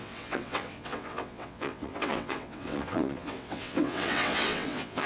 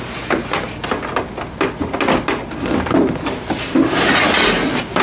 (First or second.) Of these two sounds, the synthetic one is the first